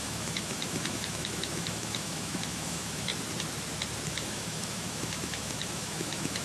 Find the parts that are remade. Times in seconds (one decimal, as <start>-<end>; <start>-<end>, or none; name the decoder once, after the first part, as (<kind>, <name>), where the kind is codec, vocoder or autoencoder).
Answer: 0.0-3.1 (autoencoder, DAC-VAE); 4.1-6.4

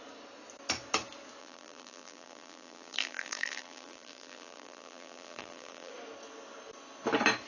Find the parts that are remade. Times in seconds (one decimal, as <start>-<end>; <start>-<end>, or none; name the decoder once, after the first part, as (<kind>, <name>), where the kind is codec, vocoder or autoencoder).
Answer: 1.4-5.9 (vocoder, BigVGAN v2)

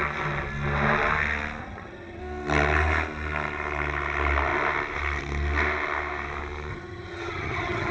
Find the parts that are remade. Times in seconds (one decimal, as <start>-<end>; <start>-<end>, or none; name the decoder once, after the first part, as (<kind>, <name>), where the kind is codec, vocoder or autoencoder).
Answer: 1.6-2.2 (vocoder, HiFi-GAN); 6.7-7.9

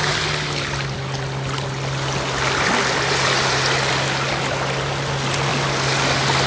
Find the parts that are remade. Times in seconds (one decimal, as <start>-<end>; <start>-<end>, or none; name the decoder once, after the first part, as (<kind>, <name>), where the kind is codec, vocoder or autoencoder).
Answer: none

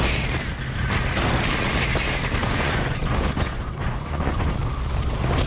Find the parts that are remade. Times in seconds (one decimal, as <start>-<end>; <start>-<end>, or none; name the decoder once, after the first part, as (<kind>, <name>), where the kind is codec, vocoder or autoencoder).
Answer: 2.4-4.5 (vocoder, Vocos)